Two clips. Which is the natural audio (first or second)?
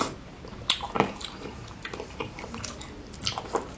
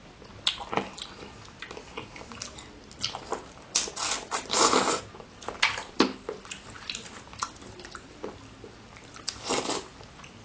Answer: second